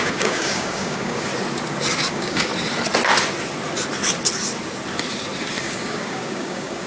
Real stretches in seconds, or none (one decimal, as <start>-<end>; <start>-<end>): 1.3-2.1; 2.5-5.6